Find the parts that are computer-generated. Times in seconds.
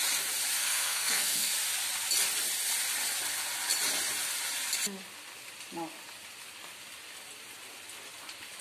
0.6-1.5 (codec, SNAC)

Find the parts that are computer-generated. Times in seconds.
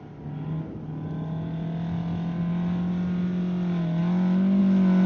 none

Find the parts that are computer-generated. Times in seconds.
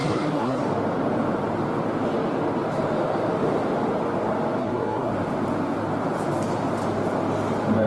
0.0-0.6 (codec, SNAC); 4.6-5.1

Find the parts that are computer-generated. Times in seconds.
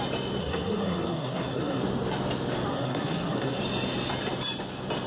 0.4-1.8 (codec, SNAC); 2.7-3.6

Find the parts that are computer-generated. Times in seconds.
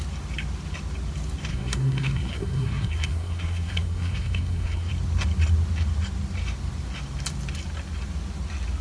1.5-4.9 (codec, SNAC)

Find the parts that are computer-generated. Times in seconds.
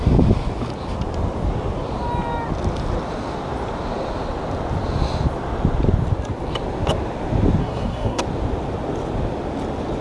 7.6-8.2 (codec, SNAC)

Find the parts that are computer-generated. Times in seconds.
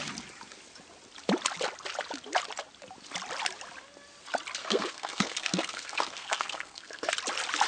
4.6-7.1 (codec, SNAC)